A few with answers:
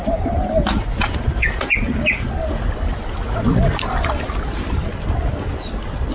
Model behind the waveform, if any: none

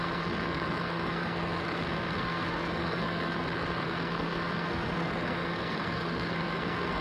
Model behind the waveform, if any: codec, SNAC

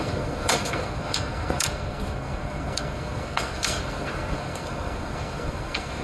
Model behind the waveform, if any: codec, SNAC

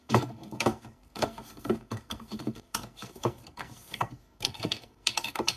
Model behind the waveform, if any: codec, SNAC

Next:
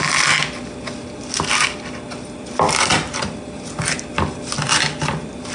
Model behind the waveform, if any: none